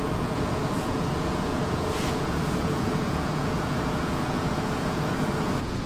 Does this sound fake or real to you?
fake